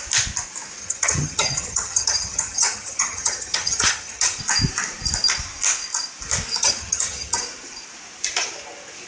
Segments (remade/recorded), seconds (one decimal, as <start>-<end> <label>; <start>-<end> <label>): 0.0-0.8 recorded; 0.8-4.4 remade; 4.4-6.6 recorded; 6.6-7.4 remade; 7.4-9.1 recorded